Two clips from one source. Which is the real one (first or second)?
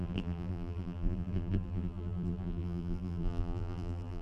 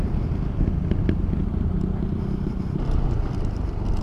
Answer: second